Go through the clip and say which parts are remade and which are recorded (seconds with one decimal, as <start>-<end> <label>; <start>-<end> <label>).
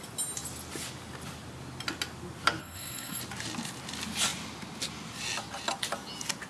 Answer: 0.0-2.6 recorded; 2.6-3.2 remade; 3.2-6.5 recorded